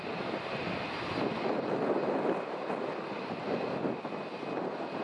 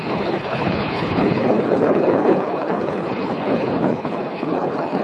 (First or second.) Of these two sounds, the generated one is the second